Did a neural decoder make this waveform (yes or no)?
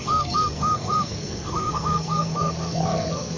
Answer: yes